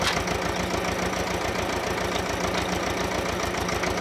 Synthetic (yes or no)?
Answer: no